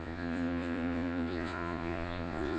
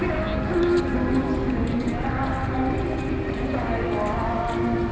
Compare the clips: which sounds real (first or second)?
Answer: second